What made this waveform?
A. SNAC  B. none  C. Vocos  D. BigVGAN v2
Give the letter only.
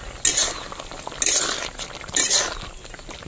B